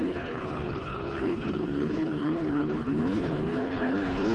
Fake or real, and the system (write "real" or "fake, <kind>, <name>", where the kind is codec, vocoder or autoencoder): fake, codec, HILCodec